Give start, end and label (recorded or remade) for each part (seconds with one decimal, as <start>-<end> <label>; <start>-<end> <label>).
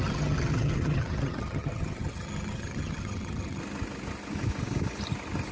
0.0-3.6 remade; 3.6-5.5 recorded